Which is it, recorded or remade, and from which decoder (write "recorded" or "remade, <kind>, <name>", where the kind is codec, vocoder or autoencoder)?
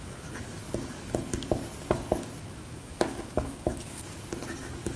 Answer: remade, codec, DAC